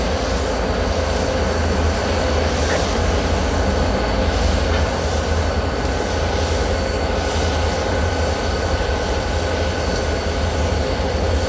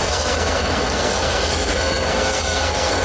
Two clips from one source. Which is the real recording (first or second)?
first